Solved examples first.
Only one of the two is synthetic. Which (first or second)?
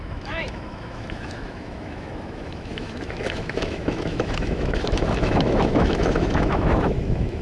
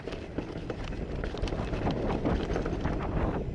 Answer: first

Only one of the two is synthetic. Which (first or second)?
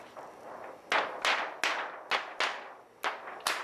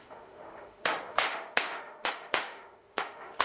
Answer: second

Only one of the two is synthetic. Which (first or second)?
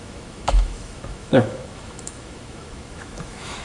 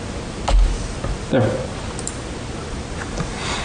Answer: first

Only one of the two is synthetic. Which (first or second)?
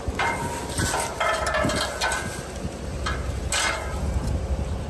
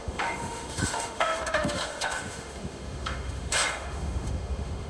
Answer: second